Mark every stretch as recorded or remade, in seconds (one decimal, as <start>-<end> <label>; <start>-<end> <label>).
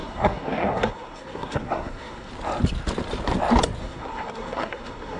0.0-2.3 remade; 2.3-3.8 recorded; 3.8-5.2 remade